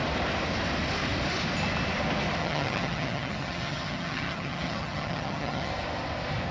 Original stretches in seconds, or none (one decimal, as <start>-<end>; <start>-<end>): 0.0-2.4; 5.7-6.5